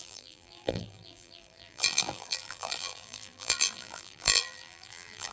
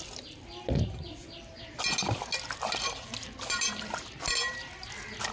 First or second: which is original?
second